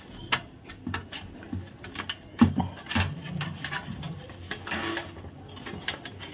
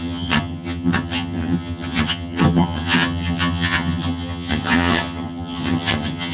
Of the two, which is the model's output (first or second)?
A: second